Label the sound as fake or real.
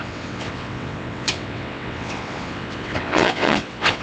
fake